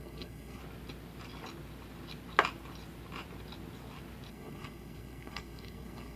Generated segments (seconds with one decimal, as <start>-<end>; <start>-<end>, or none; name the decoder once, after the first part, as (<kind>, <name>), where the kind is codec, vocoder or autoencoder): 0.0-0.6 (codec, SNAC); 4.3-6.2